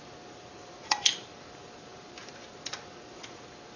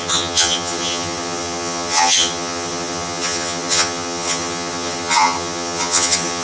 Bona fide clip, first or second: first